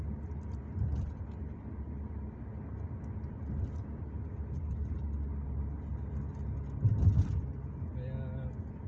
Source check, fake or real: real